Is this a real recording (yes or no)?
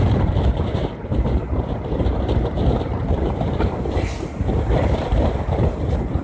no